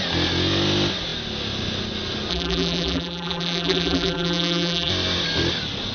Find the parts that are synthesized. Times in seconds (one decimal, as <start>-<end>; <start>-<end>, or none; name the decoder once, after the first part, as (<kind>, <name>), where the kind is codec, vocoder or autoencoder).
2.3-4.9 (vocoder, BigVGAN v2)